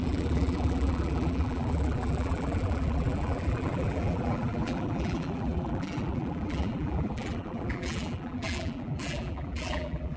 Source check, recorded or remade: remade